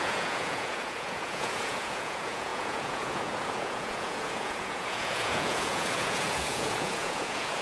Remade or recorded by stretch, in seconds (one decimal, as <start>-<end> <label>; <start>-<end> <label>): 0.0-7.6 remade